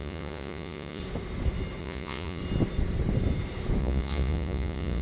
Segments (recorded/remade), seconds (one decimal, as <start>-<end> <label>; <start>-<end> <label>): 0.0-1.0 remade; 1.0-1.8 recorded; 1.8-2.4 remade; 2.4-3.8 recorded; 3.8-5.0 remade